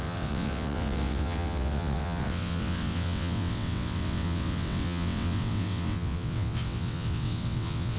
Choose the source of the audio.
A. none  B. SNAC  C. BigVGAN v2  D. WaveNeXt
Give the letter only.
D